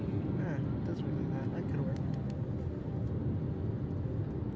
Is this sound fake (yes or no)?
no